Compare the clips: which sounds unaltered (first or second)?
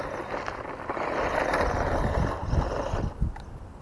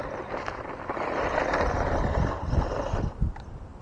first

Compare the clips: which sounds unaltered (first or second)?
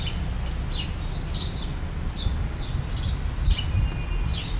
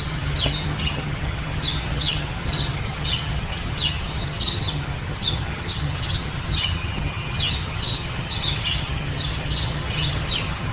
first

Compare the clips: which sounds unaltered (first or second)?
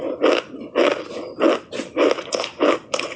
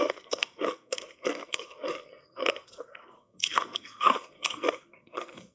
first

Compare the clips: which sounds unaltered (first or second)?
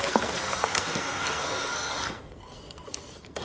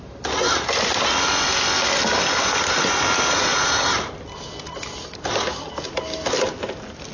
second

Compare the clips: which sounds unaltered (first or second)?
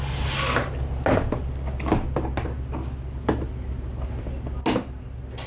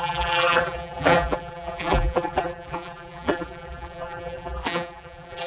first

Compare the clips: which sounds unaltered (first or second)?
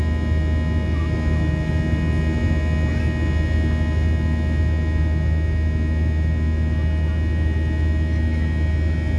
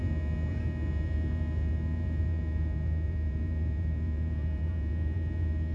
first